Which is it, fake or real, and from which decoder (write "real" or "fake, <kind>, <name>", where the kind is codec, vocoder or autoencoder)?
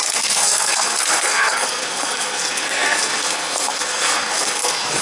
fake, codec, SNAC